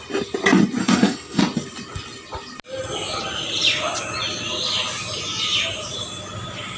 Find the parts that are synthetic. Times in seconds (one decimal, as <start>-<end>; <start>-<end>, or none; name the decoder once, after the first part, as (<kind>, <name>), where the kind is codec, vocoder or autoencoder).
0.8-1.4 (codec, SNAC)